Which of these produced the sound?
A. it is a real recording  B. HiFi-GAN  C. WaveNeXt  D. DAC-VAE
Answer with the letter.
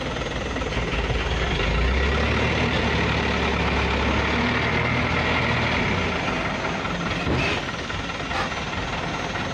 A